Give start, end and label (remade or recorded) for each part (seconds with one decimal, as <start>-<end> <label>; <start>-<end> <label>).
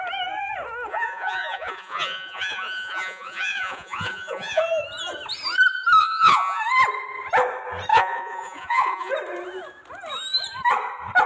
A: 0.0-0.9 recorded; 0.9-4.6 remade; 4.6-6.0 recorded; 6.0-6.6 remade; 6.6-7.9 recorded; 7.9-9.1 remade; 9.1-11.3 recorded